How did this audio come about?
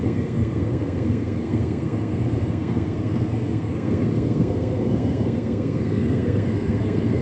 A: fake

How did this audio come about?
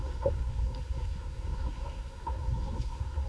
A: fake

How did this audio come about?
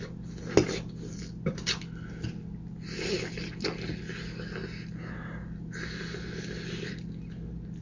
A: real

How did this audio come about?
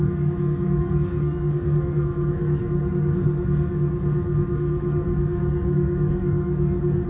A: fake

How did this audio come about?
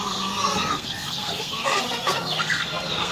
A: fake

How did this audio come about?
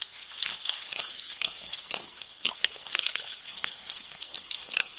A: fake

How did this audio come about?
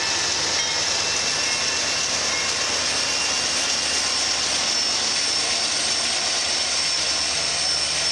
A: real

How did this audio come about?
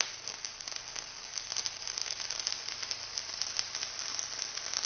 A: real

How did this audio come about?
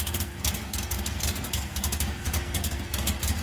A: fake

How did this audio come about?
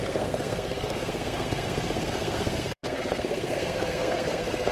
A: fake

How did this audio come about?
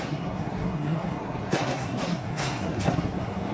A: fake